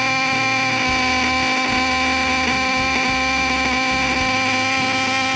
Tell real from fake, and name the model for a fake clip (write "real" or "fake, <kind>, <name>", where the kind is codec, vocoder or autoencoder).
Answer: real